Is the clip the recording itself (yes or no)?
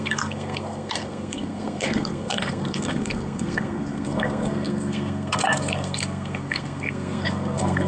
no